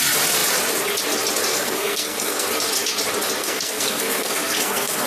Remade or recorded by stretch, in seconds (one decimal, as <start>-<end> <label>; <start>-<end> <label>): 0.0-1.5 recorded; 1.5-2.5 remade; 2.5-3.4 recorded; 3.4-5.1 remade

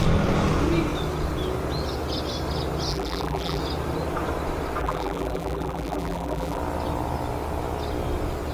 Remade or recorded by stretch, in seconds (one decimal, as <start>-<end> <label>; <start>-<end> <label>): 0.0-2.9 recorded; 2.9-3.6 remade; 3.6-4.8 recorded; 4.8-6.6 remade; 6.6-8.5 recorded

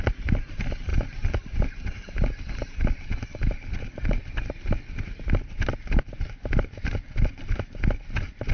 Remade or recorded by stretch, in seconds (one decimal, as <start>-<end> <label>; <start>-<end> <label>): 0.0-8.5 recorded

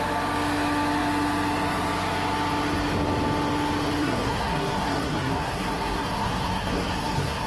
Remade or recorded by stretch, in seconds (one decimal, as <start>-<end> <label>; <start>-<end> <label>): 0.0-4.0 recorded; 4.0-7.5 remade

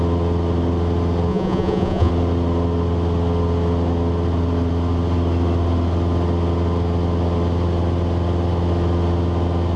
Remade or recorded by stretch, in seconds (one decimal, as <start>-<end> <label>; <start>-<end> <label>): 0.0-1.3 recorded; 1.3-2.1 remade; 2.1-9.8 recorded